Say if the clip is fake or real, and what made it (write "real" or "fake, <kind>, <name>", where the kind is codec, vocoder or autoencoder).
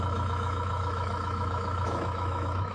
fake, autoencoder, DAC-VAE